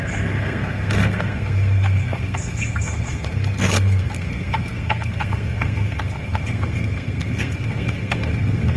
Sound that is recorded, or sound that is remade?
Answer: remade